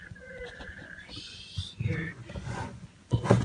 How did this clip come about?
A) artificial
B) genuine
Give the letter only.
A